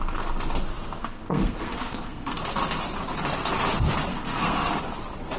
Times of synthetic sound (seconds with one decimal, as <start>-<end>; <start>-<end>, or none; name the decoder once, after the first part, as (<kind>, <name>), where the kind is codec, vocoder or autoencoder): 1.0-2.4 (codec, SNAC); 4.1-4.8